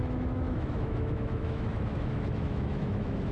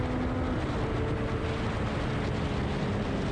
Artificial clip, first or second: first